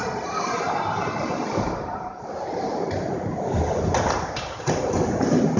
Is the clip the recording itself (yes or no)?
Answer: no